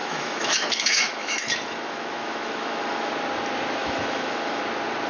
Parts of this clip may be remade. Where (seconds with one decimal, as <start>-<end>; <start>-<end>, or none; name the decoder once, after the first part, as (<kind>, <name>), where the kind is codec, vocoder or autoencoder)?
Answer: 0.0-3.1 (autoencoder, DAC-VAE); 3.8-4.6